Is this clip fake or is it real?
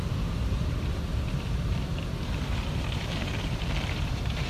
fake